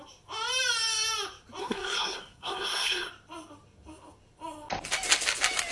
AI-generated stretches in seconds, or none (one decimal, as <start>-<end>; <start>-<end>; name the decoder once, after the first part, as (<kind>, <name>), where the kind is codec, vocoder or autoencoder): 1.6-3.1 (codec, SNAC)